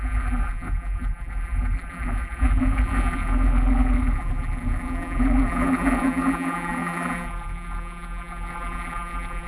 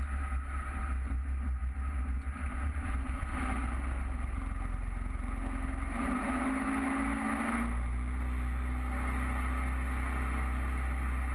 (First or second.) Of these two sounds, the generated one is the first